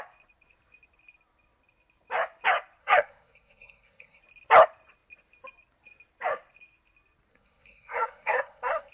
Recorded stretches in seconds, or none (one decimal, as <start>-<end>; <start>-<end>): 0.0-2.8; 4.2-7.3